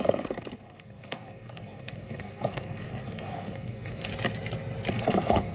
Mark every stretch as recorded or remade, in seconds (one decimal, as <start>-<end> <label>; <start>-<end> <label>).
0.0-4.1 remade; 4.1-4.9 recorded; 4.9-5.5 remade